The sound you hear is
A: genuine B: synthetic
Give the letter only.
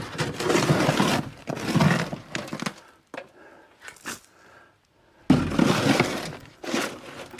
A